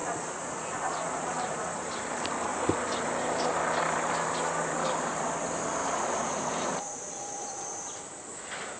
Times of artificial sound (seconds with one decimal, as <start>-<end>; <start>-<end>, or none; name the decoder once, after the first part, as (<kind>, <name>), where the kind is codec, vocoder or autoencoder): 0.0-1.7 (vocoder, Vocos); 5.8-8.1